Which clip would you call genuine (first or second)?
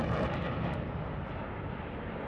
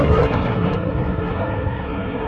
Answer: first